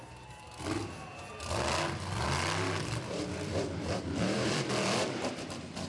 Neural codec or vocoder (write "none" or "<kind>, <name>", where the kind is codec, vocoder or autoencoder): vocoder, BigVGAN v2